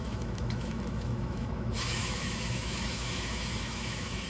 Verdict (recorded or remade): remade